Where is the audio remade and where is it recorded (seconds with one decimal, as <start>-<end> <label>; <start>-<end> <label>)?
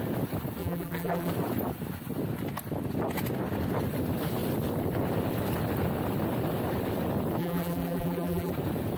0.0-0.6 recorded; 0.6-1.3 remade; 1.3-7.4 recorded; 7.4-8.5 remade; 8.5-9.0 recorded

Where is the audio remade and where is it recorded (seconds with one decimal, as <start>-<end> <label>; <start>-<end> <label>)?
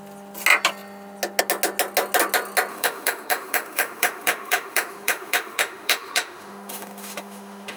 0.0-2.7 recorded; 2.7-7.8 remade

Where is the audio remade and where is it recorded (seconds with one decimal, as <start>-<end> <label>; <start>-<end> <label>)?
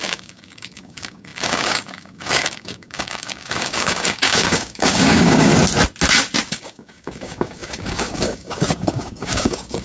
0.0-5.5 remade; 5.5-6.5 recorded; 6.5-9.8 remade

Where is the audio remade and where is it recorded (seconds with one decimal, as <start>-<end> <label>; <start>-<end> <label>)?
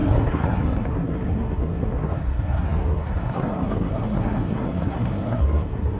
0.0-6.0 remade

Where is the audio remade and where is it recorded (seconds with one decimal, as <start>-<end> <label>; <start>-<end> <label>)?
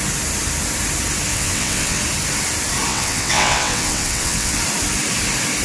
0.0-1.3 recorded; 1.3-2.0 remade; 2.0-2.9 recorded; 2.9-4.6 remade; 4.6-5.6 recorded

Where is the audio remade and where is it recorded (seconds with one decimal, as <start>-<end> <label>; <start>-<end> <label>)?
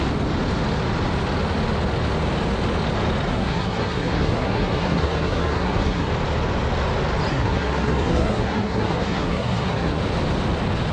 0.0-3.3 recorded; 3.3-6.1 remade; 6.1-7.3 recorded; 7.3-10.0 remade; 10.0-10.9 recorded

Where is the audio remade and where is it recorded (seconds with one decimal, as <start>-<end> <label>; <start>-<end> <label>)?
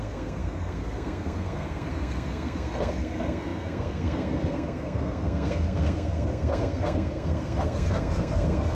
0.0-8.7 remade